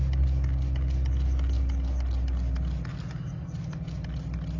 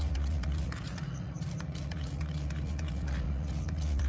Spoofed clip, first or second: second